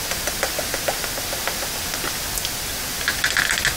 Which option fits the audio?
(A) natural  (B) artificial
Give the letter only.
A